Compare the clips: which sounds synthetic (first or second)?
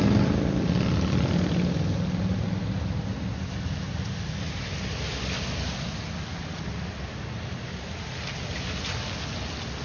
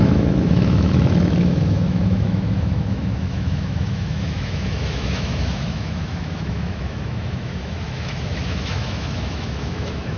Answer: second